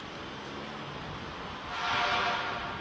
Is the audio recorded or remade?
recorded